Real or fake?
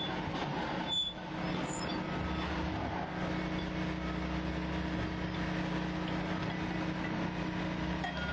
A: real